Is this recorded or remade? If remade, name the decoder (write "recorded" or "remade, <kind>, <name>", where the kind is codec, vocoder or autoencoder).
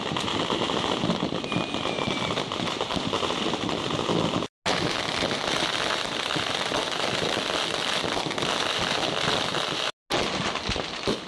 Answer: recorded